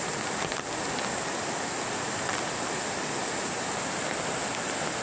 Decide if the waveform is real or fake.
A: real